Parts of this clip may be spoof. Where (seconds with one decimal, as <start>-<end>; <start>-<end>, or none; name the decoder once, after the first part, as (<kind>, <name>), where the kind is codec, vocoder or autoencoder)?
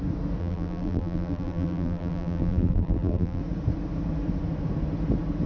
0.4-3.4 (vocoder, BigVGAN v2)